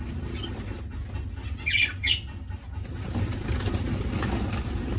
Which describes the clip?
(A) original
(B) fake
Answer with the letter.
A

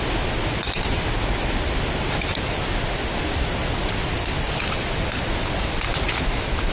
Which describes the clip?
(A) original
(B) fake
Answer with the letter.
A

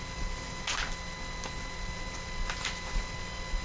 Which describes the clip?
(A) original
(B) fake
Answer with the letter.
A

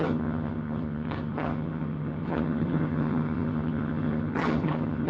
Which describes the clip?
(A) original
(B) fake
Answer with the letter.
B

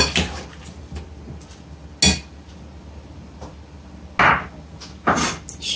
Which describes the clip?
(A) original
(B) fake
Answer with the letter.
A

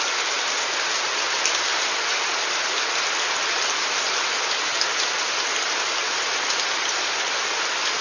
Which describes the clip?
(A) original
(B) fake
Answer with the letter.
A